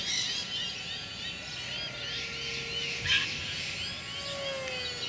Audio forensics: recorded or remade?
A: recorded